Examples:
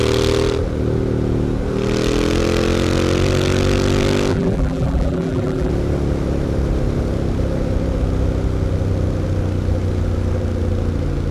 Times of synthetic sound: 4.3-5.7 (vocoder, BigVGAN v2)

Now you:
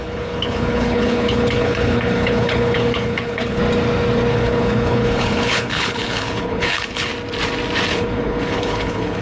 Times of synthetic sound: 0.0-3.6 (codec, HILCodec); 4.3-7.1; 7.9-9.2

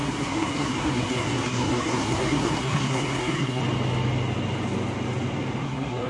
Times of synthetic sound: 0.0-3.6 (codec, SNAC); 5.6-6.1

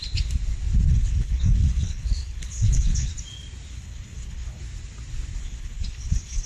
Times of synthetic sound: 0.9-3.1 (codec, HILCodec); 3.7-4.6; 5.4-6.5

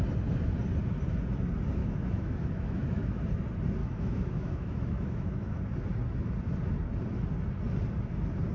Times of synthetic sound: 1.8-3.3 (autoencoder, DAC-VAE); 3.8-5.6

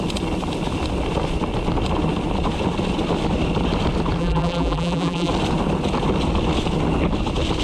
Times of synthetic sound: 4.2-5.3 (vocoder, BigVGAN v2)

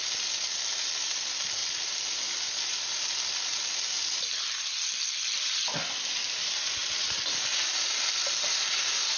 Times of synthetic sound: none